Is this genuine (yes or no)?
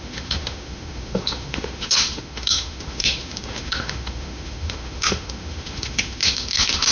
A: no